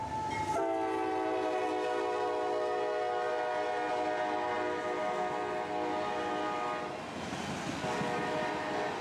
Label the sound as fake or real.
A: real